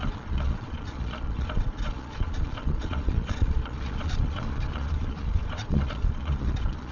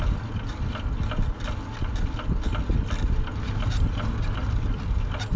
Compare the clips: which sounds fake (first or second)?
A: first